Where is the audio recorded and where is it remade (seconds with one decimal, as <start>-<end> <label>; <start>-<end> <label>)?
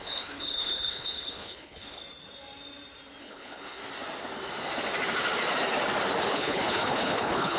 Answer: 0.0-2.0 remade; 2.0-3.2 recorded; 3.2-3.8 remade; 3.8-6.3 recorded; 6.3-7.6 remade